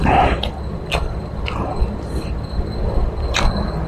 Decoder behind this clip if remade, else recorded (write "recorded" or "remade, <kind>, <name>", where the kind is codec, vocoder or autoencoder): recorded